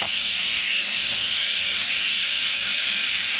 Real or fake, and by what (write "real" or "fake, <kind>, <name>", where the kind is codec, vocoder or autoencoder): fake, codec, DAC